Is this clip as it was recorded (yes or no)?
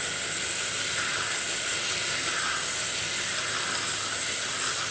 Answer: yes